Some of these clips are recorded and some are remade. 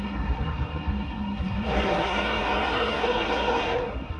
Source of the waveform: remade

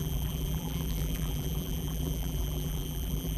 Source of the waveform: remade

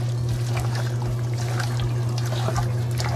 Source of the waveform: recorded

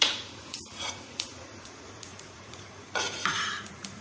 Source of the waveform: remade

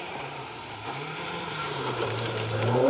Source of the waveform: remade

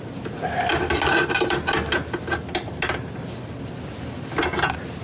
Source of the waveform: recorded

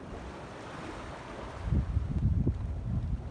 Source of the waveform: recorded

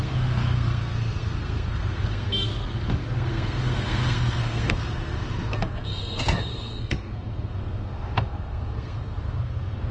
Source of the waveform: remade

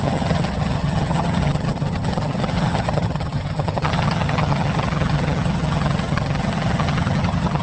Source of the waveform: remade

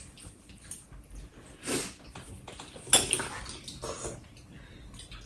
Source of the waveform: recorded